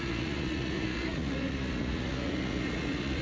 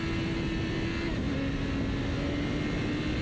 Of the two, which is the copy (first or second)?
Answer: first